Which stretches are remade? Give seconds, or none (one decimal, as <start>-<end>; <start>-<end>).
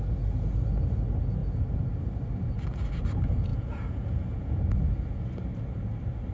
3.5-4.6